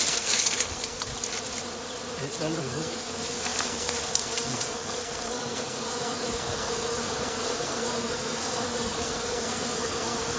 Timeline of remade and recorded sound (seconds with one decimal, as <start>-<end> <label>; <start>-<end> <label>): 0.0-1.1 remade; 1.1-2.6 recorded; 2.6-10.4 remade